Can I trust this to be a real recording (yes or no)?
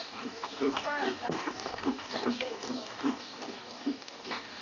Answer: no